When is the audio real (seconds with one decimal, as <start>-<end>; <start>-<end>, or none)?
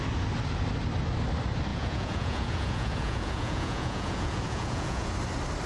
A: 0.0-1.7; 5.1-5.7